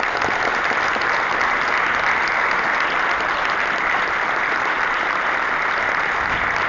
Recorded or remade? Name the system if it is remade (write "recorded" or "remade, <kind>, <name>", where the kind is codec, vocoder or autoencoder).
recorded